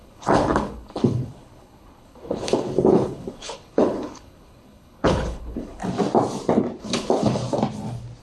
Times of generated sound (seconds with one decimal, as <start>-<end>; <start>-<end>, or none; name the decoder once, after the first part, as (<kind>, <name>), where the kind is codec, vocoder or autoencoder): 0.0-5.8 (codec, HILCodec); 6.8-7.4